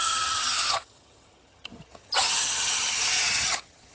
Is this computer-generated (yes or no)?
yes